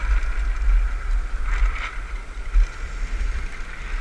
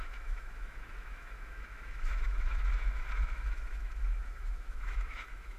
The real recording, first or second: first